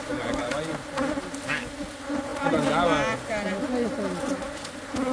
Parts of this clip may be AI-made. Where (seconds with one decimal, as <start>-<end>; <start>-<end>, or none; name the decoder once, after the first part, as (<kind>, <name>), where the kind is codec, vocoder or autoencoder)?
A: none